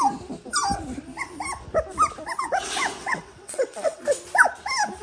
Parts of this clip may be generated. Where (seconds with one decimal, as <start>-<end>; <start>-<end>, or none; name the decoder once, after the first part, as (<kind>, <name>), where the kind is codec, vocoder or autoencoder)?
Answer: 3.0-4.0 (vocoder, WaveNeXt)